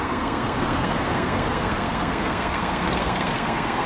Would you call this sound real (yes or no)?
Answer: no